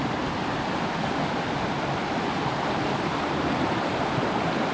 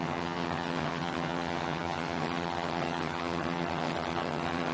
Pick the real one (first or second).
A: first